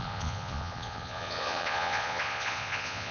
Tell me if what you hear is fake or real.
fake